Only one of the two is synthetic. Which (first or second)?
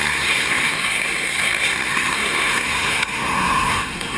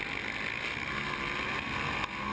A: first